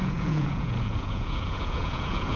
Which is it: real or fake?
fake